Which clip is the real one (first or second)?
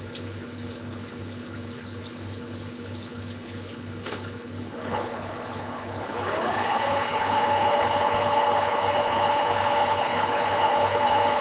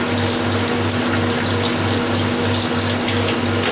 second